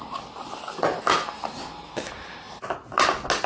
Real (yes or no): yes